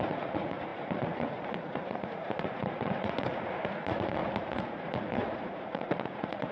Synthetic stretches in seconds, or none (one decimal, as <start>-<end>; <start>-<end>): 0.0-6.5